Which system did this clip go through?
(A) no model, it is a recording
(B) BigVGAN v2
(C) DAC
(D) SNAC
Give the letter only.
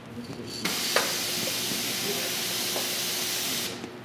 A